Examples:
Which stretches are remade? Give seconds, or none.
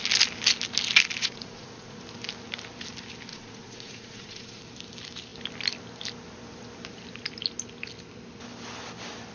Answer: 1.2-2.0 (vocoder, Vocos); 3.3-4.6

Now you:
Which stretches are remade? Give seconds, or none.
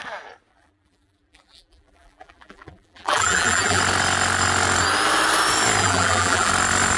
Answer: 0.5-3.8 (vocoder, BigVGAN v2); 5.8-6.5